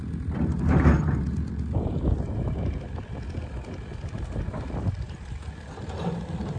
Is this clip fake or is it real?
real